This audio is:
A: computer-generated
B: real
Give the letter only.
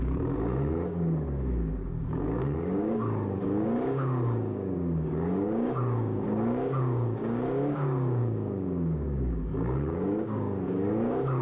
A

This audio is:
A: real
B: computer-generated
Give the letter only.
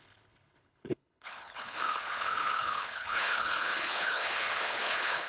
B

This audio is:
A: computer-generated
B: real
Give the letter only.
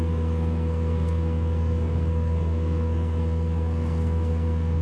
A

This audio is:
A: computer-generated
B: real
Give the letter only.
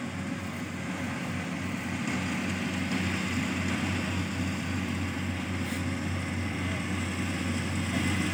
B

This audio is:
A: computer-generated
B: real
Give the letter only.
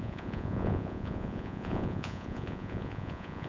A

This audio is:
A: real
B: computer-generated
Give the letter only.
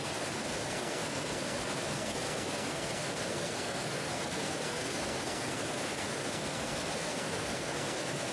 B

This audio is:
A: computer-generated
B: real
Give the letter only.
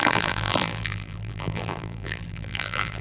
A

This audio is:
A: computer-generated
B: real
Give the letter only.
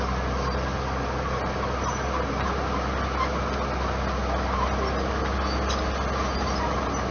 B